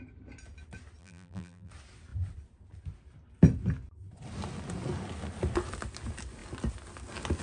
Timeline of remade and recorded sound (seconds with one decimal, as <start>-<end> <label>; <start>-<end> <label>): 0.0-1.0 recorded; 1.0-1.7 remade; 1.7-7.4 recorded